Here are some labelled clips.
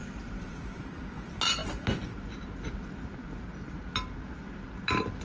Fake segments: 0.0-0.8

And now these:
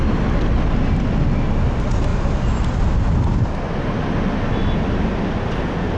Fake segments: none

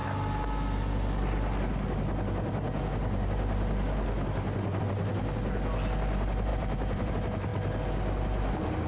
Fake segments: 6.5-7.1

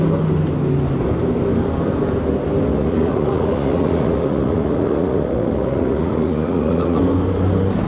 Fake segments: 2.7-7.0

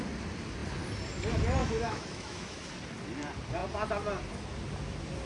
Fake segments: 1.6-2.7

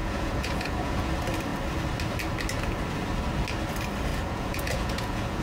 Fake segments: 0.0-1.1; 4.1-5.4

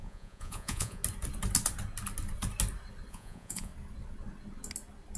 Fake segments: 0.0-1.0; 3.1-3.7

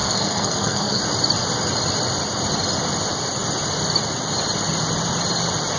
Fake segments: 0.0-1.0